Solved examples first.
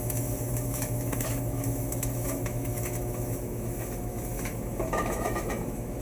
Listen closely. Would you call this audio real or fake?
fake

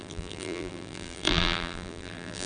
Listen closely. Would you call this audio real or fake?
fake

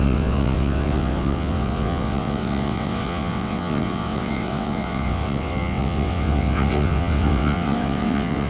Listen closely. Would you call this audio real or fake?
fake